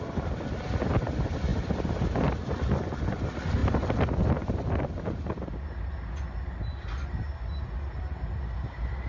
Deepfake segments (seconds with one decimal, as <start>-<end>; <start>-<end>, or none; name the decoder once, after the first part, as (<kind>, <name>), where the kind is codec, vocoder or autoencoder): none